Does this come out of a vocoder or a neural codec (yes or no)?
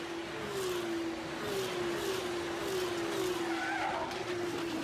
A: no